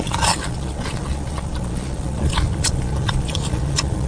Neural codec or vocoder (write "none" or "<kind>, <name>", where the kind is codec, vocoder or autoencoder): vocoder, Vocos